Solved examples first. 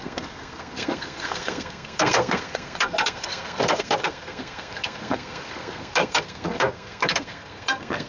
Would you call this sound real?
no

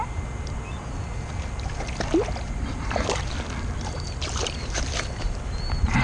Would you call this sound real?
yes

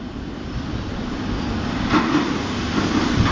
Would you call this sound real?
yes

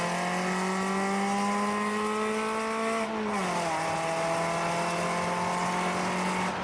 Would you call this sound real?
yes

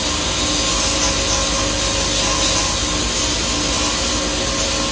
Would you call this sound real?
yes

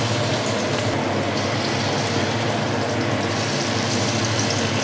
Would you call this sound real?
yes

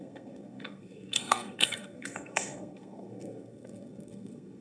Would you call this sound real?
no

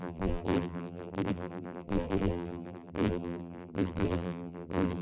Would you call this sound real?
no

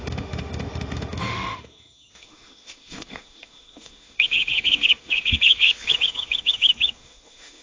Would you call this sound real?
no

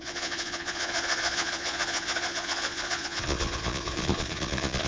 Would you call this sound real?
no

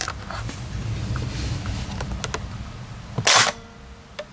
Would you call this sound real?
yes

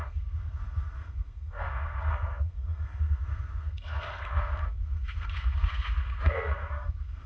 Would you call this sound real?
no